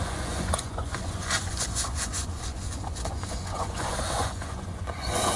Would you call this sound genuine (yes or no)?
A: no